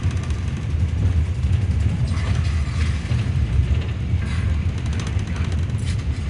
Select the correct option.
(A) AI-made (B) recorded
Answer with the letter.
B